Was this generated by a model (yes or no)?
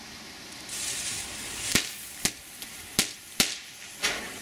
yes